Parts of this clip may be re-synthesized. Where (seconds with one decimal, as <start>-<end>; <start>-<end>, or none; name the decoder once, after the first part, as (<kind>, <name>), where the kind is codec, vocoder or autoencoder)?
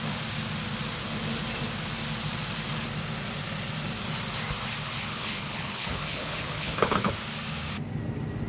5.1-7.1 (codec, HILCodec)